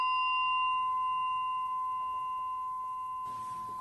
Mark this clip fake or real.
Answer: real